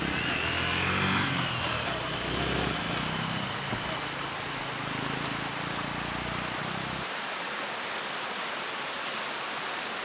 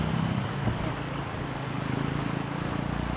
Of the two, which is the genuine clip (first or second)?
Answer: first